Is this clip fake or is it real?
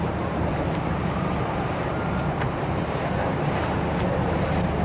fake